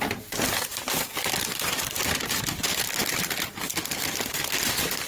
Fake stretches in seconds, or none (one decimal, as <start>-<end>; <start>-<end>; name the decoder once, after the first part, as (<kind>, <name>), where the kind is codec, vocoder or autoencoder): none